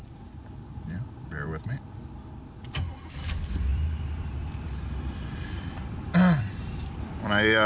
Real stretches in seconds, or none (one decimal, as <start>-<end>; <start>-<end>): 1.9-3.7